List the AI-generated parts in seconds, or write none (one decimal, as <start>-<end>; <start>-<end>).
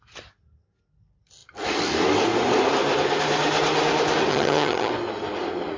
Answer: 4.3-4.9